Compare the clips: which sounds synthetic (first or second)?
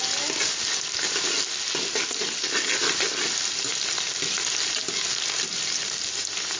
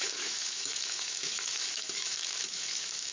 second